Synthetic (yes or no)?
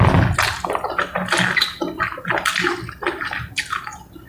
no